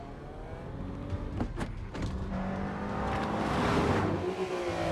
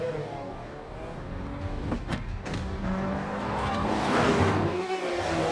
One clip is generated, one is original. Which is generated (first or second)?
second